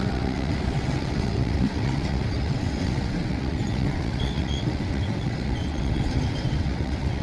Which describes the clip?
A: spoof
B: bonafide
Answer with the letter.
A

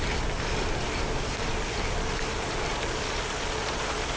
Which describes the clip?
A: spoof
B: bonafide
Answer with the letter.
B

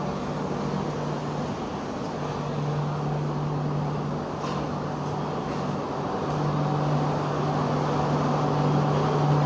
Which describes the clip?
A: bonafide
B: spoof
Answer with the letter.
A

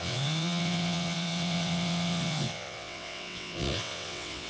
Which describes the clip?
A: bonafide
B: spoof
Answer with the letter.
B